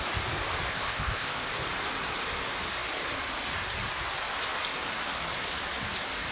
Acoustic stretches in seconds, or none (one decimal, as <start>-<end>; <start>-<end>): 0.0-0.7; 1.5-6.3